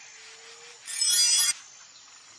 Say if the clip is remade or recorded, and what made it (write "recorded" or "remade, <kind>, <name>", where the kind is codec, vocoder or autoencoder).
recorded